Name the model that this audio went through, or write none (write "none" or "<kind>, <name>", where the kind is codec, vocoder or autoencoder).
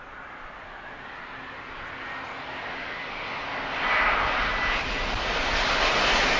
none